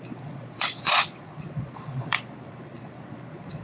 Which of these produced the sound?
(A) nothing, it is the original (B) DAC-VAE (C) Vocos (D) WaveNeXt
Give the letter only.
C